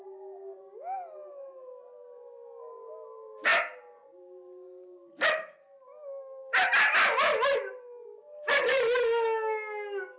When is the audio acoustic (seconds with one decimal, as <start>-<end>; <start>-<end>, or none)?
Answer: 0.0-10.2